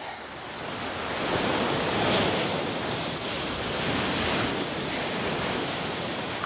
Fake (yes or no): no